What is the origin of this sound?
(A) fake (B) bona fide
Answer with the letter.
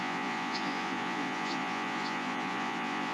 A